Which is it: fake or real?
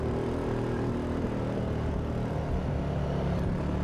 real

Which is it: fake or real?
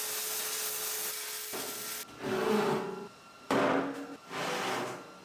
real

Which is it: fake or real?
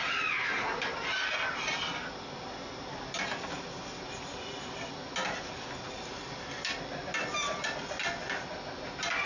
real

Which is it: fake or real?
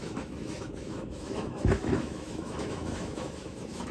fake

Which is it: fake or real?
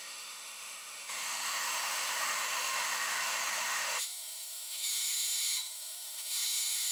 fake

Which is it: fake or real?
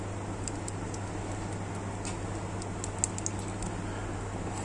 real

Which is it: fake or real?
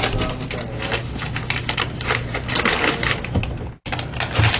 real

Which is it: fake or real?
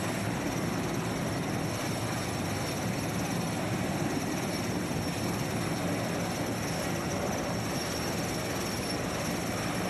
real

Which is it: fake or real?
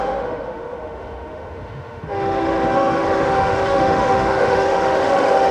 fake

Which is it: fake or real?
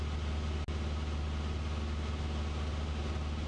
real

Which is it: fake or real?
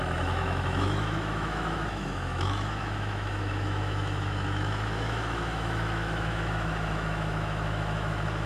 fake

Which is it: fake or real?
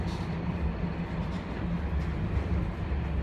real